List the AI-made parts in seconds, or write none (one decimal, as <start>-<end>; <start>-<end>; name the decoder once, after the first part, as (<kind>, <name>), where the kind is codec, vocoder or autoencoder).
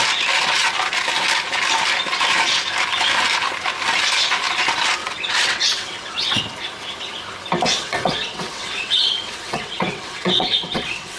5.0-6.4 (vocoder, WaveNeXt); 7.8-11.2